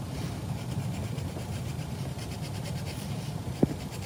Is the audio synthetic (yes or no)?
yes